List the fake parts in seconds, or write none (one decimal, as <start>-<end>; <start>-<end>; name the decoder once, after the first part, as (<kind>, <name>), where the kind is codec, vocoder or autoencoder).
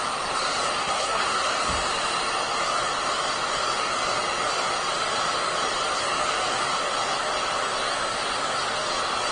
0.8-1.5 (codec, SNAC)